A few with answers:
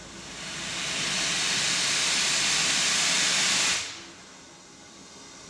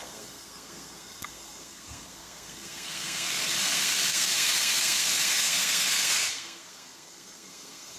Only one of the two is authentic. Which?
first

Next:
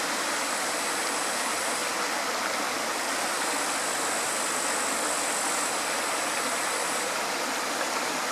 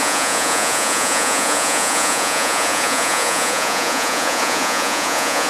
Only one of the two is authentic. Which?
first